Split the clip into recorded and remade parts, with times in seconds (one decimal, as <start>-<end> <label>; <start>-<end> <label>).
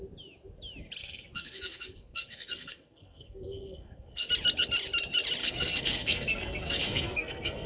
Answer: 0.0-1.0 recorded; 1.0-4.3 remade; 4.3-5.4 recorded; 5.4-7.7 remade